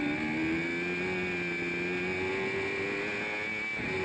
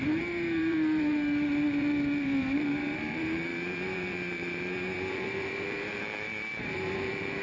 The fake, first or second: second